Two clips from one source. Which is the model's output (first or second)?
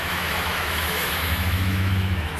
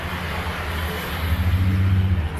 first